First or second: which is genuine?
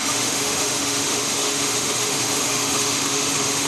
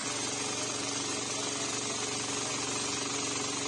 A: second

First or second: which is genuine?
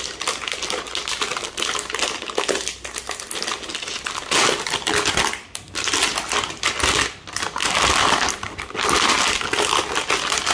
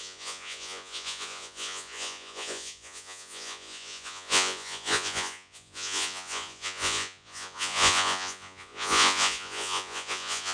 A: first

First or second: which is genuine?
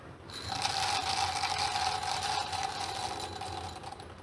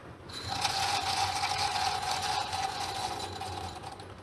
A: first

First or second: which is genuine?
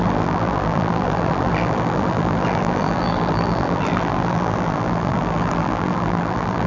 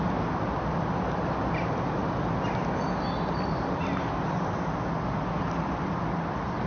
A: second